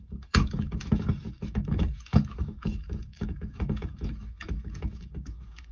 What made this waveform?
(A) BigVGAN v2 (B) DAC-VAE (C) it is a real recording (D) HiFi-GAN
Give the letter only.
B